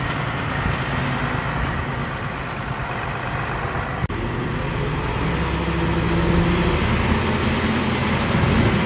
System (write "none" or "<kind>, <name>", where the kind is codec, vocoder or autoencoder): none